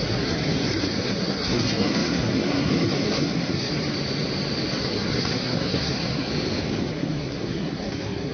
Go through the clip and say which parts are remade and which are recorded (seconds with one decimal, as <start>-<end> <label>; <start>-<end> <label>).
0.0-3.7 remade; 3.7-4.8 recorded; 4.8-6.3 remade; 6.3-6.9 recorded; 6.9-8.3 remade